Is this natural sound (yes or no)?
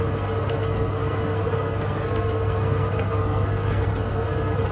no